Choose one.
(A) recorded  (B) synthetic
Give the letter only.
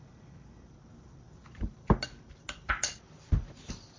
A